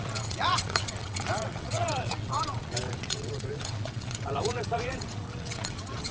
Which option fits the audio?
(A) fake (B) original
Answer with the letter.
A